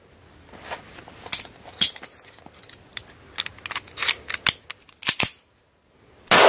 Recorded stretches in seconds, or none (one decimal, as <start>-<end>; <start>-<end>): 0.0-6.5